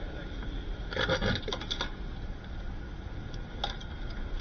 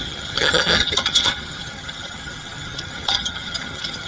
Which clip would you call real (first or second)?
first